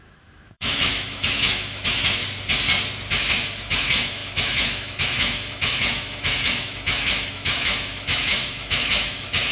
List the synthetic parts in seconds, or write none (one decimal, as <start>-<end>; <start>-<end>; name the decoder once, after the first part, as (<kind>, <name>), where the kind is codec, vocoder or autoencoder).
0.0-2.2 (autoencoder, DAC-VAE); 3.3-9.5